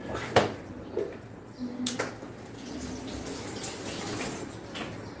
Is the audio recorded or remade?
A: recorded